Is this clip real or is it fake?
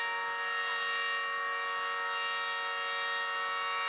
real